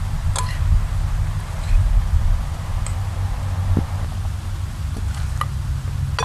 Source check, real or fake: real